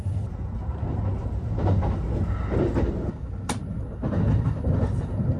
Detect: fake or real real